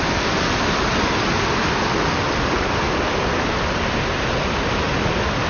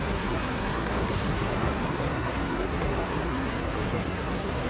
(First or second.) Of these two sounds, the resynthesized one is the second